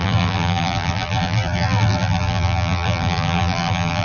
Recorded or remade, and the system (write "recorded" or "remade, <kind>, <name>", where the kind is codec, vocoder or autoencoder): remade, vocoder, BigVGAN v2